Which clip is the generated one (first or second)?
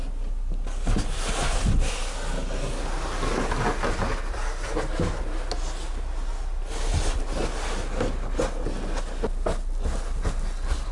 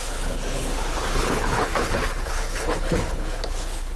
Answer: second